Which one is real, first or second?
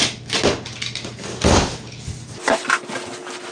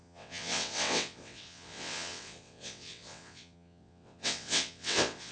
first